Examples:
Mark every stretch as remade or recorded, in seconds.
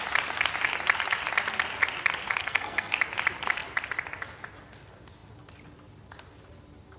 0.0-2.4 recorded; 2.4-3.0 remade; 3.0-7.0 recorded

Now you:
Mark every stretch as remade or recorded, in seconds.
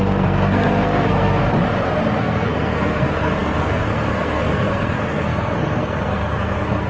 0.0-1.4 remade; 1.4-2.2 recorded; 2.2-6.9 remade